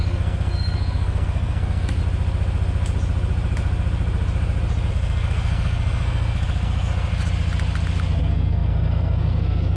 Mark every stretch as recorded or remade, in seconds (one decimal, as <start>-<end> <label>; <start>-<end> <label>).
0.0-2.0 remade; 2.0-4.9 recorded; 4.9-7.1 remade; 7.1-8.2 recorded; 8.2-9.8 remade